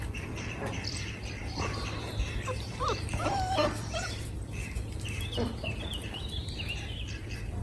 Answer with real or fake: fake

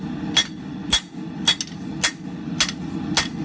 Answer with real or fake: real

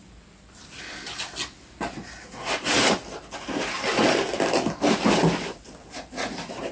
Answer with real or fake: real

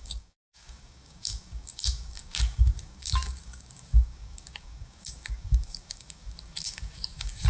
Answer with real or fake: fake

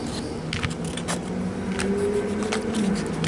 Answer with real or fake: real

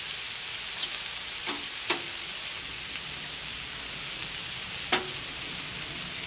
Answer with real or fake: real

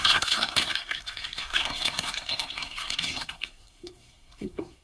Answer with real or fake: fake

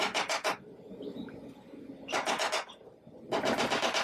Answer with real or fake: real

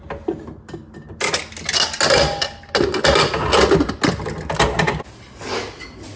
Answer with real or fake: real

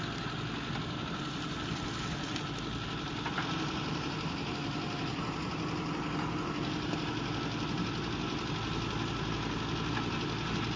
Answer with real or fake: real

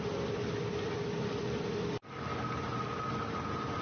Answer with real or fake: real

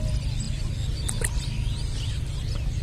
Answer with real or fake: real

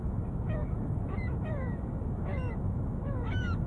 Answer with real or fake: fake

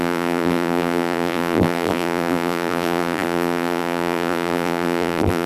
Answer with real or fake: fake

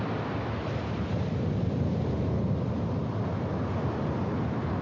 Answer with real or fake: real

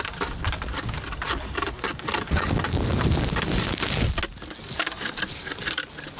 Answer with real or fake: real